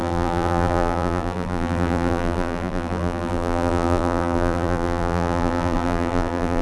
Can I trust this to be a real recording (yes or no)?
no